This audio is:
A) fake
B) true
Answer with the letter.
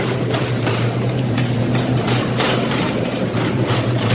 A